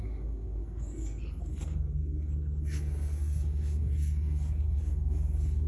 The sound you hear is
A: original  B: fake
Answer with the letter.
B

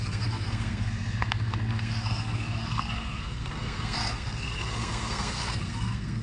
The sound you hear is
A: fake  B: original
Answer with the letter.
A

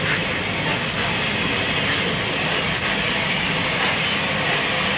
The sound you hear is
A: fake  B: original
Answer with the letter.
B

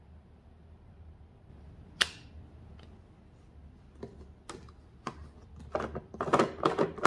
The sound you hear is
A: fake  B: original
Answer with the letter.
B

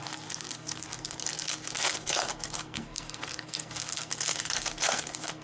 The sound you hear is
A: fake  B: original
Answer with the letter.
A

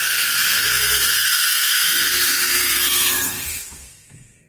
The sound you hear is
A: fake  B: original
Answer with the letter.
A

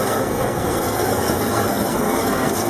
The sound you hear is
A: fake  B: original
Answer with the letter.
A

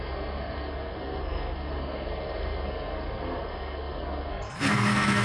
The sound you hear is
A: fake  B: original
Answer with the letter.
A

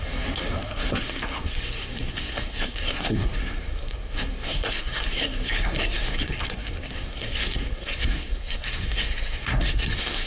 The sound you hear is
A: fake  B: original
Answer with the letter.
A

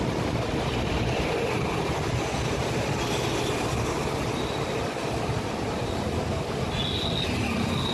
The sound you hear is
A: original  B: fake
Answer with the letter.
A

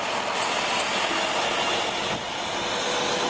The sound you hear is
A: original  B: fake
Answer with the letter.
A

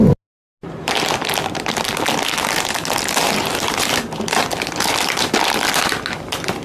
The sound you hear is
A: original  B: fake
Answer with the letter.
A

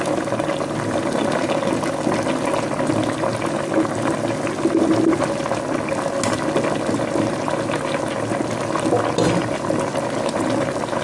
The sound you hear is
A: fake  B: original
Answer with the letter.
B